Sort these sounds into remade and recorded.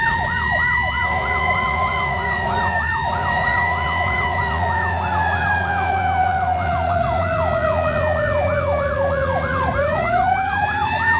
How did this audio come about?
remade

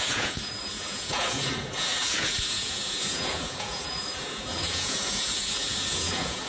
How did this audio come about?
remade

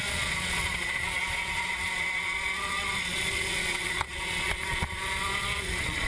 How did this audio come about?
remade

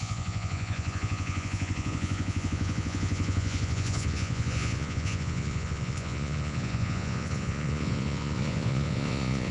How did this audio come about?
remade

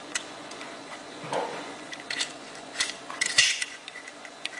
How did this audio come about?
remade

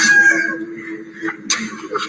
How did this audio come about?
recorded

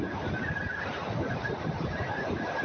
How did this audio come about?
recorded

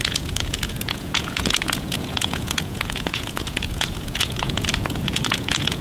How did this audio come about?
remade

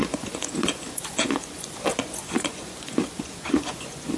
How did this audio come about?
remade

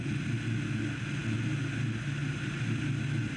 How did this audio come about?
recorded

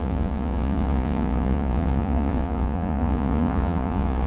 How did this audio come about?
remade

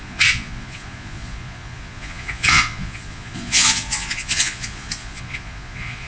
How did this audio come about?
remade